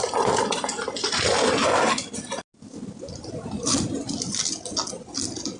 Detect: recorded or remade recorded